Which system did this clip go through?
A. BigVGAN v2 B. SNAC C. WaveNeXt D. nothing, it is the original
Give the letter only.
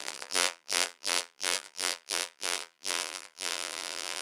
A